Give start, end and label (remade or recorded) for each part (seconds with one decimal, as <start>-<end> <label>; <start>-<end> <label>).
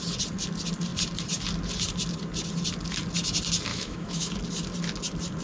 0.0-3.7 recorded; 3.7-4.3 remade; 4.3-5.4 recorded